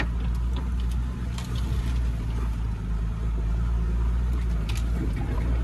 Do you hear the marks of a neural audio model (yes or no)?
no